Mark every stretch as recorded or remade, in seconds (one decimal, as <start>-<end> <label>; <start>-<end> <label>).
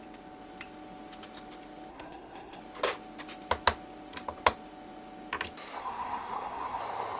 0.0-1.9 recorded; 1.9-2.6 remade; 2.6-5.8 recorded; 5.8-6.8 remade; 6.8-7.2 recorded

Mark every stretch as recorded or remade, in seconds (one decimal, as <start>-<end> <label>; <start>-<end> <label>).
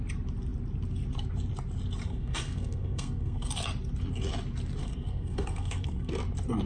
0.0-2.0 recorded; 2.0-3.5 remade; 3.5-4.8 recorded; 4.8-6.1 remade; 6.1-6.7 recorded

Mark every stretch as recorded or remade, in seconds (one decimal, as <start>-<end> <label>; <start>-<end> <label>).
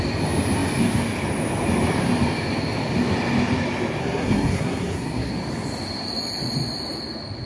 0.0-4.0 recorded; 4.0-5.3 remade; 5.3-7.5 recorded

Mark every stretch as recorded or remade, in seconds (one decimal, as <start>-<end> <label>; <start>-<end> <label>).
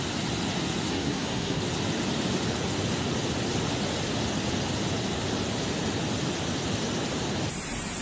0.0-0.9 recorded; 0.9-1.6 remade; 1.6-8.0 recorded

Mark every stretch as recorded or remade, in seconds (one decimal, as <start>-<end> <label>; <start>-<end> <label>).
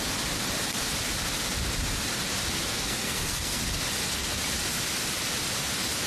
0.0-2.7 recorded; 2.7-3.6 remade; 3.6-6.1 recorded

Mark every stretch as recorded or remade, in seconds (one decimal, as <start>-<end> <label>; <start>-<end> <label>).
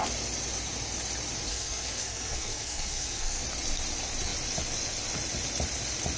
0.0-1.5 recorded; 1.5-3.4 remade; 3.4-6.2 recorded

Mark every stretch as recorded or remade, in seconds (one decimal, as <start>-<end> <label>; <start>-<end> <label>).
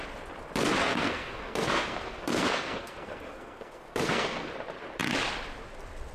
0.0-0.8 recorded; 0.8-4.5 remade; 4.5-6.1 recorded